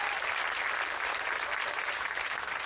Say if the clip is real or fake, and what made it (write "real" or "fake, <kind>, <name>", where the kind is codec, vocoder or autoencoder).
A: real